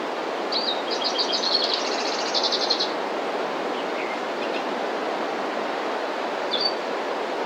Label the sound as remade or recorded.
recorded